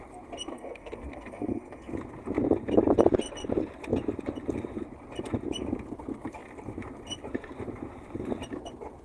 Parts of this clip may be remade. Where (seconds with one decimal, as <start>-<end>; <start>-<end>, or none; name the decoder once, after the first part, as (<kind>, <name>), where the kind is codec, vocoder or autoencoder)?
0.5-1.9 (codec, SNAC)